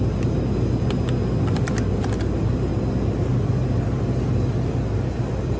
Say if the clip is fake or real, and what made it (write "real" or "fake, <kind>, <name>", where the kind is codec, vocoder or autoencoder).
real